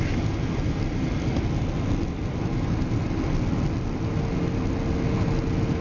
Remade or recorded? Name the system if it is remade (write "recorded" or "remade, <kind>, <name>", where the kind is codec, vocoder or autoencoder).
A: recorded